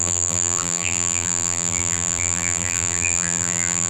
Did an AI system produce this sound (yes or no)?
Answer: yes